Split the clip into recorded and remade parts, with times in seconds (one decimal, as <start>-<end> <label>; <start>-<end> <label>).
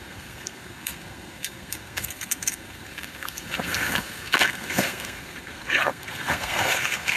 0.0-7.2 remade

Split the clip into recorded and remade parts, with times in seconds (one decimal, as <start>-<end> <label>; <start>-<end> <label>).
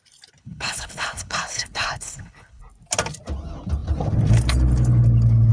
0.0-0.4 recorded; 0.4-2.6 remade; 2.6-5.5 recorded